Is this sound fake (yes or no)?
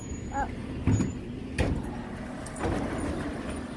no